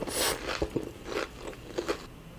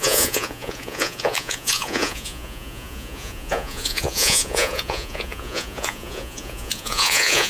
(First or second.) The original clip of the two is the first